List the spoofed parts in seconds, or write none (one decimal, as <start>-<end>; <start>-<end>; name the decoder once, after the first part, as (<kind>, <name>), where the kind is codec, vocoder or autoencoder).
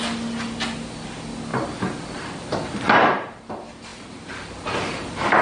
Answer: none